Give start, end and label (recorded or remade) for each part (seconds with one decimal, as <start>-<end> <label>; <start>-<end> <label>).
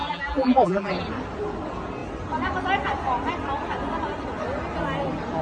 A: 0.0-0.9 remade; 0.9-5.4 recorded